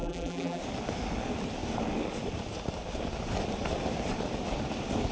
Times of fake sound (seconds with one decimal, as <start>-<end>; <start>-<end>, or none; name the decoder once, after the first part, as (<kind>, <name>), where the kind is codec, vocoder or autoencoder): 0.0-0.6 (vocoder, BigVGAN v2)